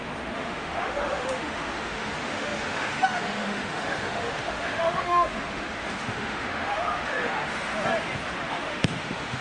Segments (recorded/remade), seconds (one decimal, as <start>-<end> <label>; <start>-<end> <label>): 0.0-7.7 remade; 7.7-8.5 recorded; 8.5-9.4 remade